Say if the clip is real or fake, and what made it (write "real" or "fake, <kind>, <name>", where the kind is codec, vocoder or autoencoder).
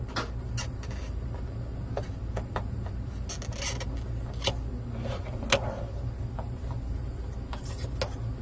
real